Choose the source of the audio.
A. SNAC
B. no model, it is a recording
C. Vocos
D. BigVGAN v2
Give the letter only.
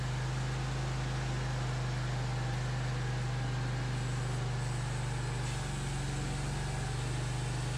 B